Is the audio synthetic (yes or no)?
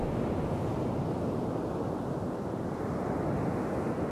no